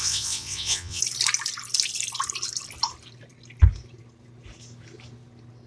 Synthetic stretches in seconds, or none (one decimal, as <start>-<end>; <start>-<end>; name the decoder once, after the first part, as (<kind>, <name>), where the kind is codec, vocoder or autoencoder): 0.0-1.0 (vocoder, WaveNeXt)